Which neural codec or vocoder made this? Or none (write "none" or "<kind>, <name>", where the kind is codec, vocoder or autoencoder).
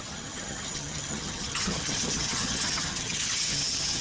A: vocoder, HiFi-GAN